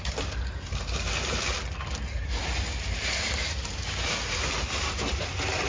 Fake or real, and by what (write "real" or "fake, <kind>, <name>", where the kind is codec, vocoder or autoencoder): real